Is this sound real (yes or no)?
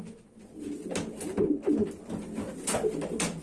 yes